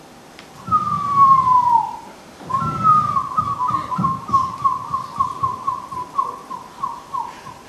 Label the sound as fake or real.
real